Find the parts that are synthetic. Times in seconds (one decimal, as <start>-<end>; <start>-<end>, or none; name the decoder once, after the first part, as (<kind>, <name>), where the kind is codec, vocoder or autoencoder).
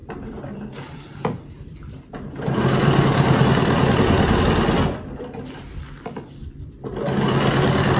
0.0-4.4 (vocoder, BigVGAN v2)